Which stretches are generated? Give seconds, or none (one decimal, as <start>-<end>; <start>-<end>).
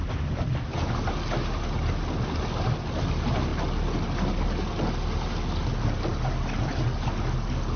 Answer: none